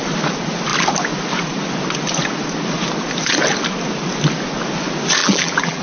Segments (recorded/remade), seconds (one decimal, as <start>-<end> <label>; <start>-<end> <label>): 0.0-5.2 recorded; 5.2-5.8 remade